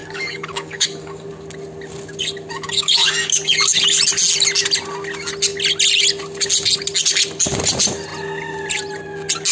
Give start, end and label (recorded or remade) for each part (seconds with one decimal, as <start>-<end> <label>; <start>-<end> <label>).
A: 0.0-1.3 remade; 1.3-2.5 recorded; 2.5-3.4 remade; 3.4-9.5 recorded